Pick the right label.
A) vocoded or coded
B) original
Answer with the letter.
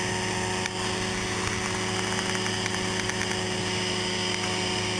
B